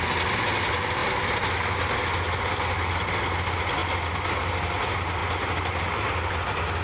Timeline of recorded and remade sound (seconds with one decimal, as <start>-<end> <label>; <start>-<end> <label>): 0.0-3.8 recorded; 3.8-4.5 remade; 4.5-5.2 recorded; 5.2-6.3 remade; 6.3-6.8 recorded